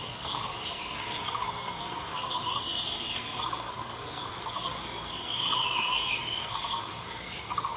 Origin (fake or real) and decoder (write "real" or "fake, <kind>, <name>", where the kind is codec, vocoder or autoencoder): fake, codec, SNAC